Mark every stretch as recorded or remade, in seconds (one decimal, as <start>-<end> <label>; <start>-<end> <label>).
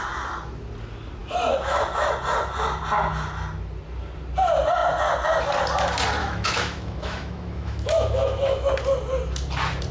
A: 0.0-1.2 recorded; 1.2-2.1 remade; 2.1-6.2 recorded; 6.2-8.7 remade; 8.7-9.9 recorded